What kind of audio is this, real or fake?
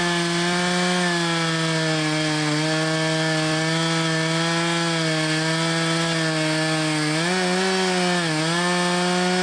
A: real